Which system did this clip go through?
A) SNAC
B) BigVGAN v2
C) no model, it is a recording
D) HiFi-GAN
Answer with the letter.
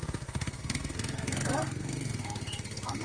A